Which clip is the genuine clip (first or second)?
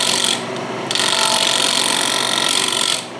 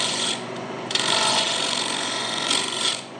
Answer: first